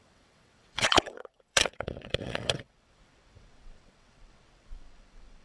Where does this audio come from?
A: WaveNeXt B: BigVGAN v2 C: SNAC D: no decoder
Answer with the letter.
A